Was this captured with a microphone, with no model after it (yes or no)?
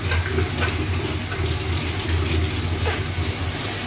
yes